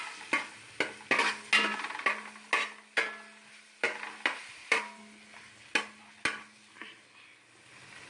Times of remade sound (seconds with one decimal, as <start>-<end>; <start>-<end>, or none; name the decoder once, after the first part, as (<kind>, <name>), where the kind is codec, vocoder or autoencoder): none